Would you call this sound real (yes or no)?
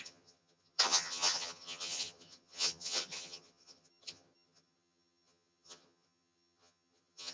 no